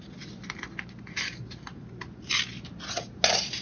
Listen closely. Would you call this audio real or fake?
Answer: real